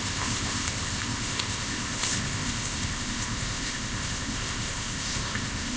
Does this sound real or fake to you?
fake